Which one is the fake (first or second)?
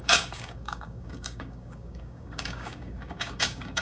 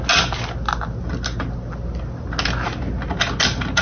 first